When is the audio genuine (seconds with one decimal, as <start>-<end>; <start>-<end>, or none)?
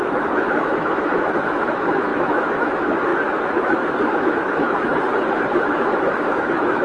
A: 4.9-5.6